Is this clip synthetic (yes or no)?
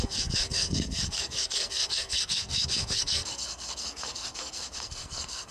yes